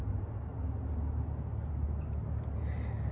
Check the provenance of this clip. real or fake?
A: real